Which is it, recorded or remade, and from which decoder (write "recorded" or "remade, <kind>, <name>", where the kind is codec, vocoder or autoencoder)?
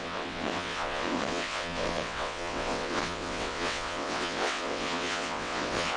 remade, vocoder, WaveNeXt